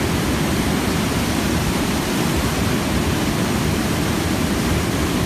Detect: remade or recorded remade